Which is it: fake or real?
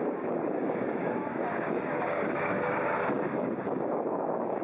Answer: fake